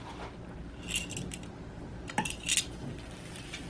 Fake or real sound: real